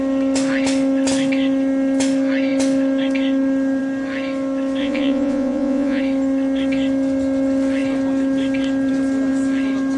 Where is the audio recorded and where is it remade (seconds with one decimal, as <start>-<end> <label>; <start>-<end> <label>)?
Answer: 0.0-4.8 recorded; 4.8-6.0 remade; 6.0-10.0 recorded